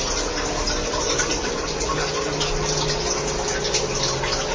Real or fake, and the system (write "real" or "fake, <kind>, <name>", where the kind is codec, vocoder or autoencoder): real